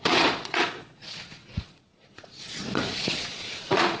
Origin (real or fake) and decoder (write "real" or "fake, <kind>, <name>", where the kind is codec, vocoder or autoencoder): fake, vocoder, Vocos